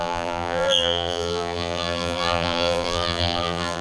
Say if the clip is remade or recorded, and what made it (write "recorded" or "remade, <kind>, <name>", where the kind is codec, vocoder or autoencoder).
remade, vocoder, BigVGAN v2